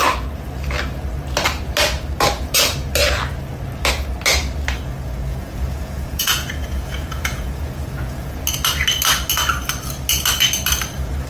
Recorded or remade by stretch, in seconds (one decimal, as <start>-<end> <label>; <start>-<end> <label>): 0.0-5.3 recorded; 5.3-8.4 remade; 8.4-11.3 recorded